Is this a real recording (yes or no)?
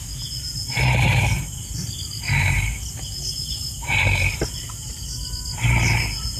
yes